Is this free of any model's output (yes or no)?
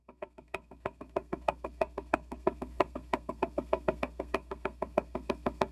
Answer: no